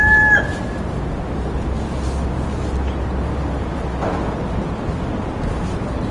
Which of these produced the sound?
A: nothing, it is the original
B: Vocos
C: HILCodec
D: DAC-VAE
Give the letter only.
A